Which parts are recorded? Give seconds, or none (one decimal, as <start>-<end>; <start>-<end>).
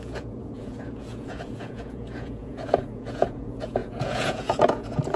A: none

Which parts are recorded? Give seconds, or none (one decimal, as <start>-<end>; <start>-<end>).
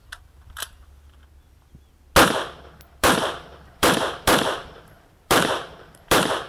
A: 1.2-3.0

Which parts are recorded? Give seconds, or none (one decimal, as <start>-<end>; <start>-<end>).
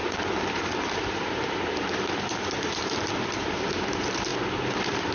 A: 4.3-5.1